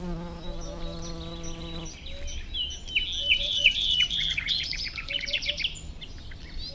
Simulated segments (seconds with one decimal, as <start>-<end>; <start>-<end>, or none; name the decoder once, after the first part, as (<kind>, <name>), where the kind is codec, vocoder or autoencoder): 3.3-5.5 (vocoder, Vocos)